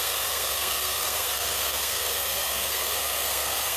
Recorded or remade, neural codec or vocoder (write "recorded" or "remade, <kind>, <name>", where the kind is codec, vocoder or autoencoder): remade, codec, SNAC